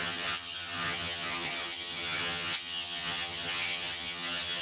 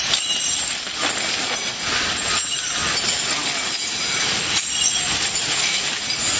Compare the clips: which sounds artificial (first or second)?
first